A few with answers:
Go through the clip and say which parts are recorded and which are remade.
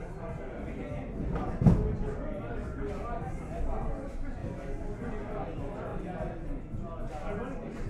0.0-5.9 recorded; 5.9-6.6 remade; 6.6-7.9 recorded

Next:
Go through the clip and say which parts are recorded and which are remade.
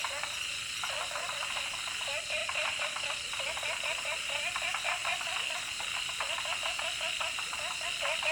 0.0-2.4 recorded; 2.4-3.3 remade; 3.3-8.3 recorded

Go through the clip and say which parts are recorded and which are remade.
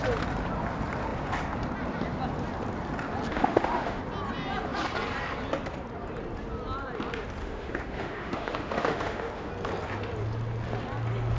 0.0-3.3 recorded; 3.3-4.0 remade; 4.0-7.4 recorded; 7.4-9.5 remade; 9.5-11.4 recorded